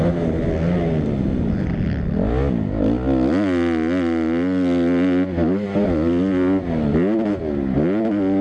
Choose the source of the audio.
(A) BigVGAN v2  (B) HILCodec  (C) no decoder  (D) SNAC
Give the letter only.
C